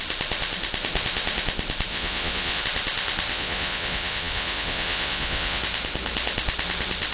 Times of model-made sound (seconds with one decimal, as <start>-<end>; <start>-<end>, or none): 1.9-2.6; 3.3-5.6